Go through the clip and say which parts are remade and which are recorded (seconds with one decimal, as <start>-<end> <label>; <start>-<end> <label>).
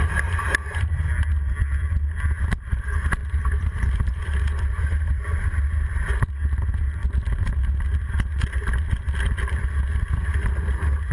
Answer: 0.0-3.2 recorded; 3.2-4.4 remade; 4.4-11.1 recorded